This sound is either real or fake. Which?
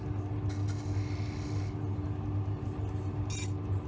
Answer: real